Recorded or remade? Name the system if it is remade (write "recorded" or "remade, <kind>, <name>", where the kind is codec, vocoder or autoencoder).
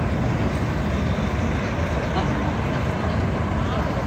recorded